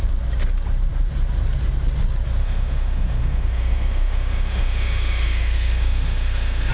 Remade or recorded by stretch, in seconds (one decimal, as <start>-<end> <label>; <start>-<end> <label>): 0.0-2.4 recorded; 2.4-6.7 remade